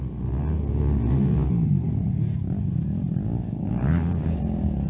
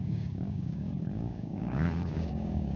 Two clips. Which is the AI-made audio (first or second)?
second